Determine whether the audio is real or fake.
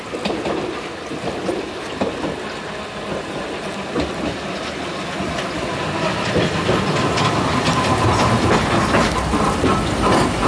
real